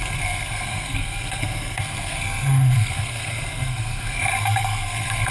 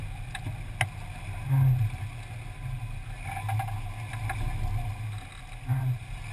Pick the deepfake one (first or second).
first